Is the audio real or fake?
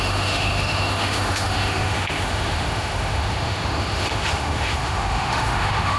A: fake